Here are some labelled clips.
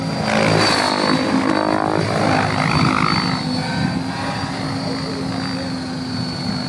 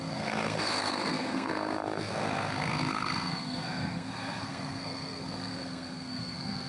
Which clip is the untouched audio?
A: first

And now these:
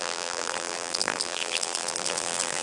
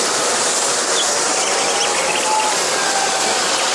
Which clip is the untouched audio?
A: second